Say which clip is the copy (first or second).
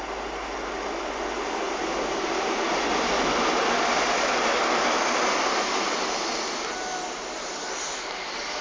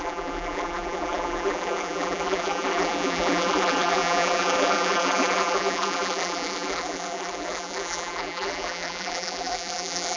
second